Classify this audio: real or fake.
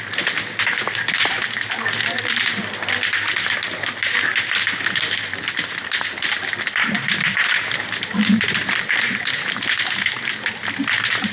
real